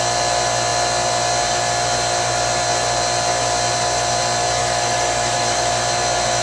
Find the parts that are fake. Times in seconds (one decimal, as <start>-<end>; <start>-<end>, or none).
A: 4.6-5.7